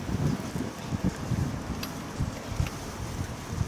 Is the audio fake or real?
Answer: real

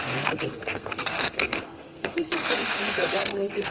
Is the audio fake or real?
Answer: fake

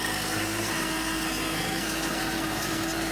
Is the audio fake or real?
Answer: fake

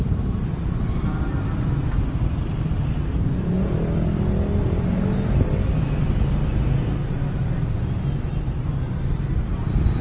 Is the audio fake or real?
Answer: real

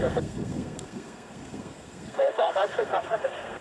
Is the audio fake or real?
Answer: fake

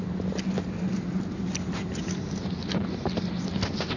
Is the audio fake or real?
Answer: real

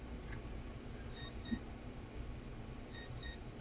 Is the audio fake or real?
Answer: real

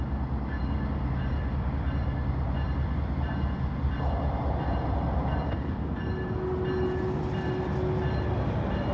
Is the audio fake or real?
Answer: real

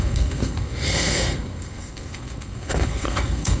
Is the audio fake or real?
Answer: fake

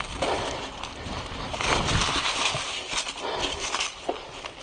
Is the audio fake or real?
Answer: real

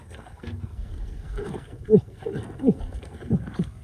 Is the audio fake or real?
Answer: fake